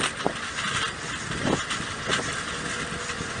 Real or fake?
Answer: real